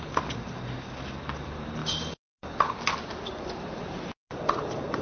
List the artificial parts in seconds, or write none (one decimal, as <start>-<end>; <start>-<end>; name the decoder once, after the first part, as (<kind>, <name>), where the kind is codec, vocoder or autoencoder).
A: none